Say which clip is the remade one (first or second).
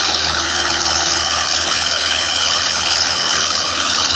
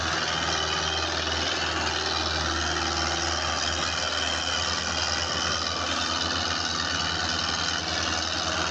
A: first